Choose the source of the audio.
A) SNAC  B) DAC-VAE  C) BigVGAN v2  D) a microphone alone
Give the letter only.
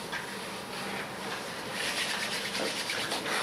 D